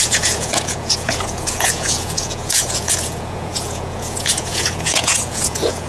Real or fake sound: fake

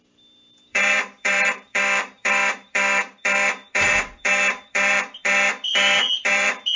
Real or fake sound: fake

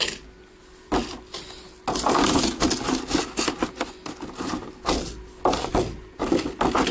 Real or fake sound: real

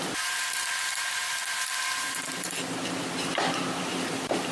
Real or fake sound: fake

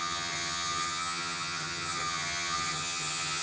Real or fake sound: fake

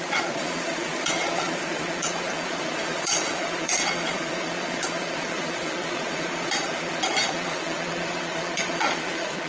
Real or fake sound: fake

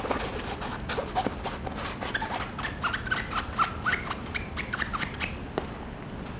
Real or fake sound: real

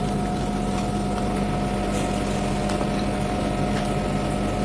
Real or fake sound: real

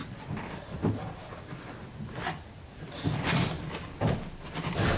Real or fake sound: real